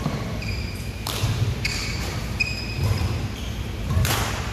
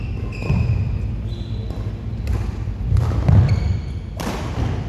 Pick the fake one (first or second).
first